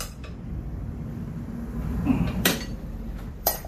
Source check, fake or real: fake